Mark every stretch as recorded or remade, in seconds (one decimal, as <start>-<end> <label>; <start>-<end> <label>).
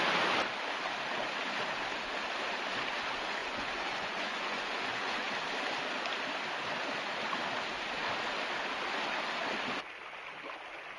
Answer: 0.0-3.4 recorded; 3.4-5.3 remade; 5.3-11.0 recorded